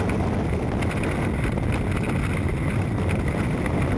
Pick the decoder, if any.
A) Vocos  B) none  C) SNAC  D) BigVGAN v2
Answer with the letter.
B